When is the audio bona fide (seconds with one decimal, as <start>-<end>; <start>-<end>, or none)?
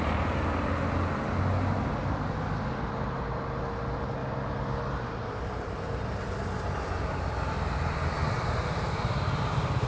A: 0.0-9.9